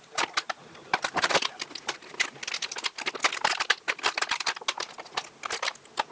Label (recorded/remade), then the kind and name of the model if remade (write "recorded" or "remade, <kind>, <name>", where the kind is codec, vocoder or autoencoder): recorded